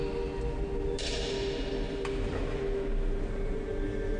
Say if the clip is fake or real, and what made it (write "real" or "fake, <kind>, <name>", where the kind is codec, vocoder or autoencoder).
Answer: real